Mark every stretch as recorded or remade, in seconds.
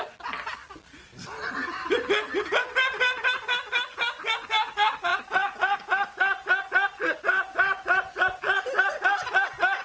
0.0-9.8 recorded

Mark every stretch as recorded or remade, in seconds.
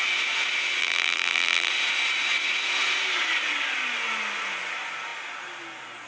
0.0-0.8 recorded; 0.8-1.7 remade; 1.7-6.1 recorded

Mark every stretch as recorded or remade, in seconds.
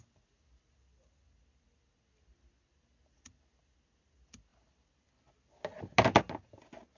0.0-7.0 recorded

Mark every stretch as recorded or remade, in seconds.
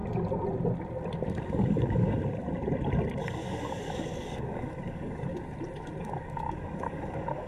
0.0-1.5 recorded; 1.5-2.2 remade; 2.2-3.4 recorded; 3.4-5.3 remade; 5.3-6.0 recorded; 6.0-7.5 remade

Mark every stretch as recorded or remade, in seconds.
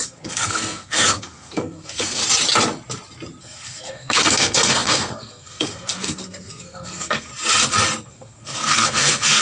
0.0-2.2 remade; 2.2-3.4 recorded; 3.4-7.3 remade; 7.3-8.1 recorded; 8.1-9.4 remade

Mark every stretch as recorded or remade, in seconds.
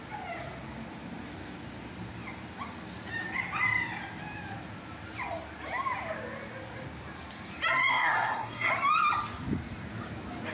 0.0-7.9 recorded; 7.9-8.7 remade; 8.7-10.5 recorded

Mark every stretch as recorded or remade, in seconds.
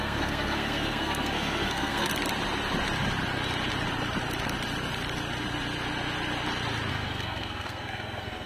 0.0-2.1 remade; 2.1-6.9 recorded; 6.9-8.5 remade